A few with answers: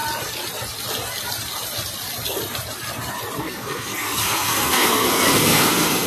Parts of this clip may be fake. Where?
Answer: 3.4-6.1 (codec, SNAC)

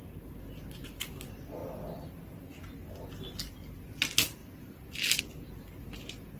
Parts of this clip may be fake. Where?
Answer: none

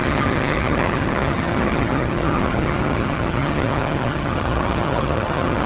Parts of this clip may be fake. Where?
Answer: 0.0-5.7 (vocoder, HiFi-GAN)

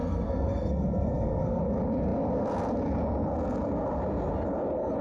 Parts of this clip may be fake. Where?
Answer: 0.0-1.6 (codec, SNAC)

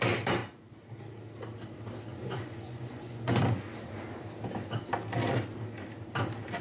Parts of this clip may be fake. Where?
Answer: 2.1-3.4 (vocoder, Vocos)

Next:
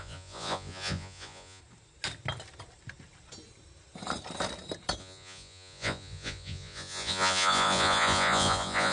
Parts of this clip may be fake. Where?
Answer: 0.0-1.6 (vocoder, Vocos); 5.0-8.9

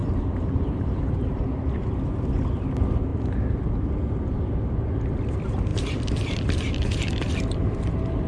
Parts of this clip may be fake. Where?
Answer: 0.0-1.4 (vocoder, BigVGAN v2); 3.1-3.6

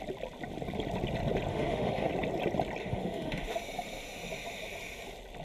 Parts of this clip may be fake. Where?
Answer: 1.5-2.1 (autoencoder, DAC-VAE); 2.8-3.6